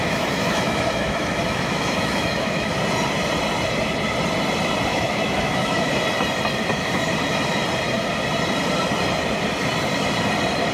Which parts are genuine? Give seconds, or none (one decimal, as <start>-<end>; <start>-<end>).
2.8-4.9; 5.9-10.7